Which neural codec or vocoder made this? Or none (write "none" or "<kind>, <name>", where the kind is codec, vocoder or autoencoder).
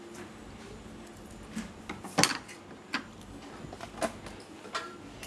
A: none